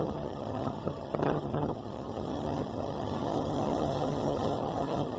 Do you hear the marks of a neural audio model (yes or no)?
yes